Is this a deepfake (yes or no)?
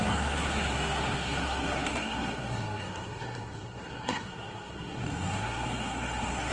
yes